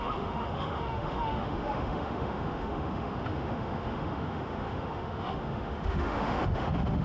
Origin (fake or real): fake